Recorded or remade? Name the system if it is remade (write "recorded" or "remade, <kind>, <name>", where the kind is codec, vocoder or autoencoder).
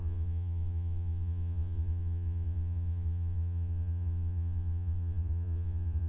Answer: remade, vocoder, Vocos